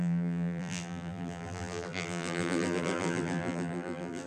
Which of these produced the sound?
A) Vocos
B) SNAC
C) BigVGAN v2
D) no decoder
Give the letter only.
C